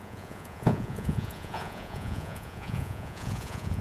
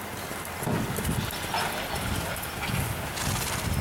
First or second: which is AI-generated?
first